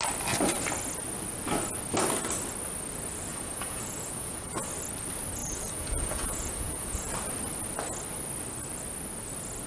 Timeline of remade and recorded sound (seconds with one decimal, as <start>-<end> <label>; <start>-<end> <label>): 0.0-3.3 recorded; 3.3-4.7 remade; 4.7-5.4 recorded; 5.4-7.1 remade; 7.1-9.7 recorded